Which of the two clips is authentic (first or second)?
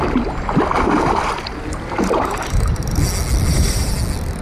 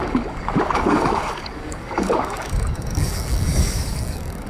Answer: first